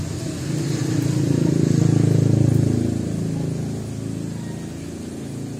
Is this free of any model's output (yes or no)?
yes